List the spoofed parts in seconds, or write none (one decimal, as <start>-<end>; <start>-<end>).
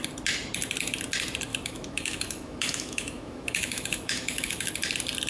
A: 1.5-4.7